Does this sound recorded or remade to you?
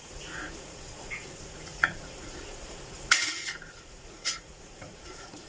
remade